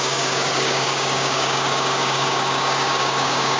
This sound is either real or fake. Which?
fake